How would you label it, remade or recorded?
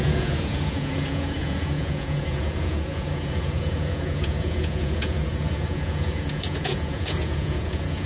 remade